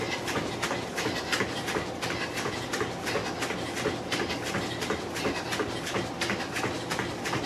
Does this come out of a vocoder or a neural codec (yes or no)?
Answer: no